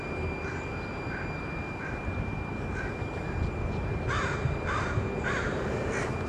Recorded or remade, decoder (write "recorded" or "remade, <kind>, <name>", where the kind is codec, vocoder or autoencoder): remade, vocoder, BigVGAN v2